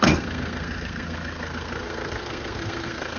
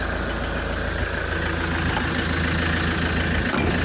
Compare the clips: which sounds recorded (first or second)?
second